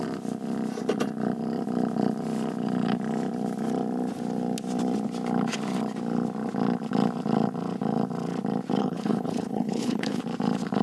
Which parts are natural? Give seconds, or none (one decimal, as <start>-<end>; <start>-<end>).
0.0-8.8; 10.2-10.8